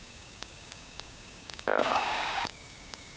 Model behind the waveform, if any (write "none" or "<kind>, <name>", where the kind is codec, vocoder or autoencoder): codec, DAC